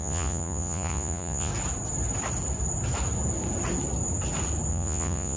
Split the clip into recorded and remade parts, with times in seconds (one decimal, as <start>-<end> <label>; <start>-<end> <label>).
0.0-1.5 remade; 1.5-4.7 recorded; 4.7-5.4 remade